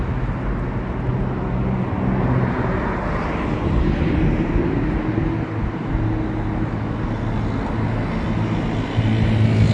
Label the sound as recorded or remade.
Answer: recorded